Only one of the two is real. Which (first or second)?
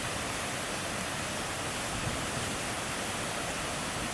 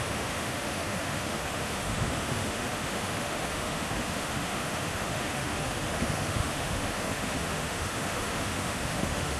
first